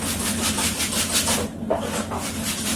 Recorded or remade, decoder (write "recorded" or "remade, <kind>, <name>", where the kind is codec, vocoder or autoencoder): recorded